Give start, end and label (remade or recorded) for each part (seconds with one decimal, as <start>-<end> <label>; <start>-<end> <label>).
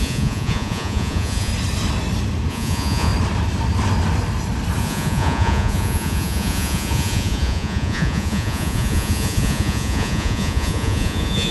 0.0-1.5 remade; 1.5-2.5 recorded; 2.5-3.1 remade; 3.1-4.8 recorded; 4.8-11.5 remade